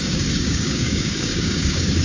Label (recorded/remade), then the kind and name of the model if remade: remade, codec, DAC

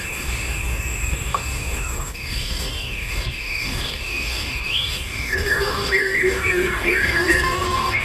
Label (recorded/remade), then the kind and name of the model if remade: remade, codec, DAC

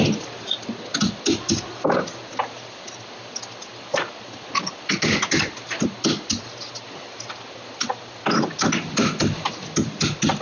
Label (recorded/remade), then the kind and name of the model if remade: recorded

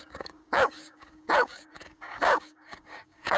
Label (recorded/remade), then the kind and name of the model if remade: remade, codec, DAC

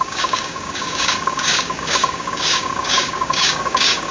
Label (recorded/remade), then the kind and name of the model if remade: remade, codec, DAC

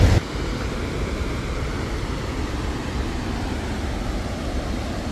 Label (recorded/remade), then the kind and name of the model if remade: recorded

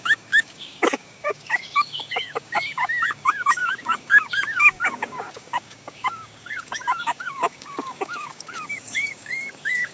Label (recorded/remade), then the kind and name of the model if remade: remade, codec, DAC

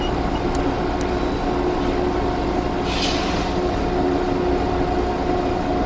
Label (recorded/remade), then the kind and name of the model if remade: recorded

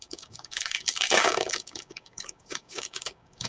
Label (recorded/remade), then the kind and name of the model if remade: remade, codec, DAC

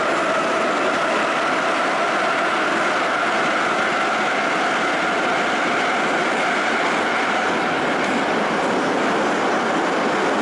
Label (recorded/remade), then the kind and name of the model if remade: recorded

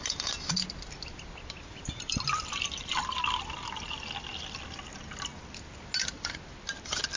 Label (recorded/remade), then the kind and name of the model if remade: recorded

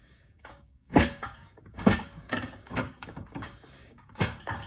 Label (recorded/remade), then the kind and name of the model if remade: remade, codec, DAC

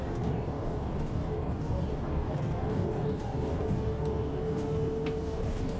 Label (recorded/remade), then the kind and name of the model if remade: remade, codec, DAC